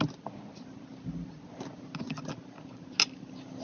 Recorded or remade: recorded